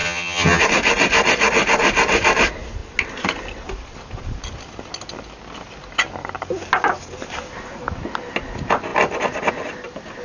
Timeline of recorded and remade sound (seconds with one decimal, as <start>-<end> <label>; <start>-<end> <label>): 0.0-0.6 remade; 0.6-10.2 recorded